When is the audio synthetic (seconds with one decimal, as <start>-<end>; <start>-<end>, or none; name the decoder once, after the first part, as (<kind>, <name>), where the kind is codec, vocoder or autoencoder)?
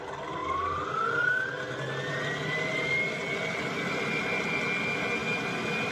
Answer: none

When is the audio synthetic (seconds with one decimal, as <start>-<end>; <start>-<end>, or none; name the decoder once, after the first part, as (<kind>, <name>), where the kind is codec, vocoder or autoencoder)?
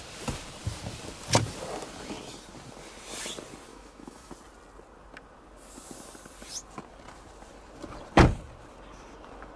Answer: 3.7-4.3 (autoencoder, DAC-VAE)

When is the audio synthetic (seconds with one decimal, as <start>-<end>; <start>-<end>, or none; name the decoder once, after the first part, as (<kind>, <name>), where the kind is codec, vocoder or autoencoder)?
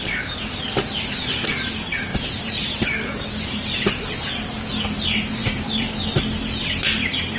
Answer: 2.1-2.8 (vocoder, BigVGAN v2); 5.4-6.0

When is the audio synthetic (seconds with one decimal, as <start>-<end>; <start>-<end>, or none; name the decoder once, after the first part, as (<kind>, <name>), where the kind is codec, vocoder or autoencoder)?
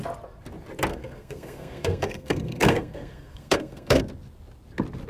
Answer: 0.9-4.0 (codec, SNAC)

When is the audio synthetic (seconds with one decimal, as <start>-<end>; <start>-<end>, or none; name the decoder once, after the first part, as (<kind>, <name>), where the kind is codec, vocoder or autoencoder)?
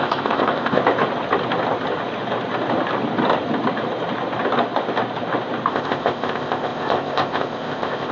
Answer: 0.0-0.8 (codec, ZipCodec); 5.7-8.1